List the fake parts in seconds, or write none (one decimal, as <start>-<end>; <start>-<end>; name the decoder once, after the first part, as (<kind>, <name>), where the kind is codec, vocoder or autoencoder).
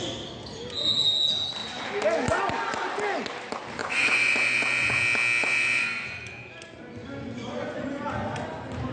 3.8-5.0 (vocoder, Vocos); 5.4-6.2; 7.4-8.1